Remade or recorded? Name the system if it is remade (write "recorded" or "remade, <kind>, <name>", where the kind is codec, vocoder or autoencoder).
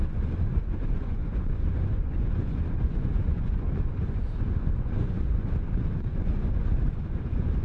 remade, vocoder, Vocos